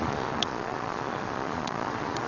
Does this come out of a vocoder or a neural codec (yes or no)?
yes